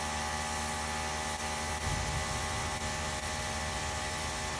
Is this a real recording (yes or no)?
yes